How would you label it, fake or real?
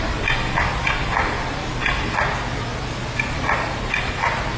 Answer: real